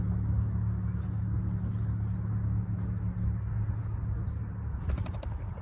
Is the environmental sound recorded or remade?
recorded